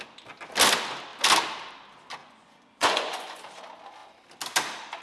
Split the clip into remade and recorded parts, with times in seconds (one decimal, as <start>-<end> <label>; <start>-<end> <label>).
0.0-2.2 recorded; 2.2-3.4 remade; 3.4-5.0 recorded